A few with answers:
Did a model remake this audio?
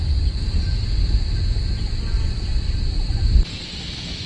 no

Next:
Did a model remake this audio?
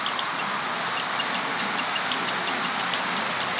no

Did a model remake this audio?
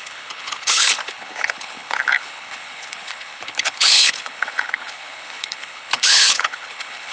yes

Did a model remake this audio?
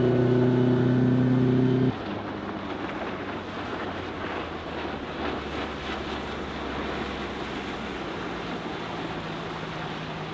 no